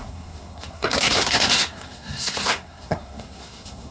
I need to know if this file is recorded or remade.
remade